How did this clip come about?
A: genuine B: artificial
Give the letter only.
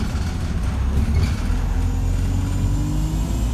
A